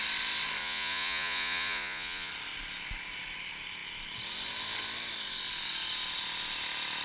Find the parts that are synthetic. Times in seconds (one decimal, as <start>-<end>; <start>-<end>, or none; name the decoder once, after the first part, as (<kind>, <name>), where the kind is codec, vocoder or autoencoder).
0.6-2.3 (vocoder, Vocos)